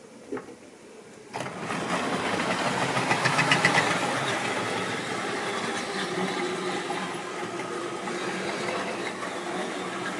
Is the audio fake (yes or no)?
no